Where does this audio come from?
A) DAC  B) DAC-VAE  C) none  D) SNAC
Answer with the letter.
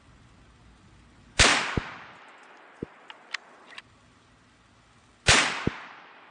C